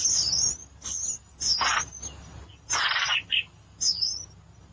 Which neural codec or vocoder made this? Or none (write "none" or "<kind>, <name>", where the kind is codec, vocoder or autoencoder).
none